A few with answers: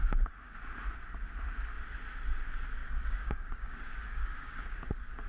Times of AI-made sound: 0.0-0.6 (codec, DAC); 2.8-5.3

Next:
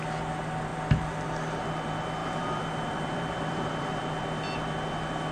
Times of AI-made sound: 2.2-4.0 (vocoder, BigVGAN v2)